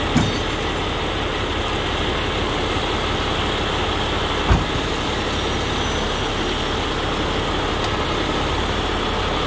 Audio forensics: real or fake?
real